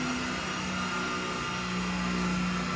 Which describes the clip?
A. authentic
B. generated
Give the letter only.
A